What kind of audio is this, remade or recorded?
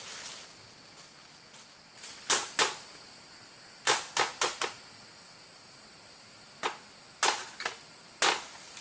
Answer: recorded